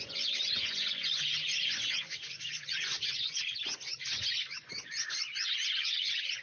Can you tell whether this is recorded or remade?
remade